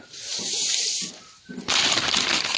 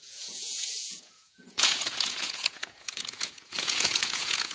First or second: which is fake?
second